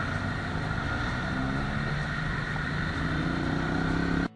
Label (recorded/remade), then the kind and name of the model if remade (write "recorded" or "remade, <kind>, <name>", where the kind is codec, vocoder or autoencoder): recorded